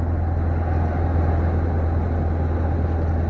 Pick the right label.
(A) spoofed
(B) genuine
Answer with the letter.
B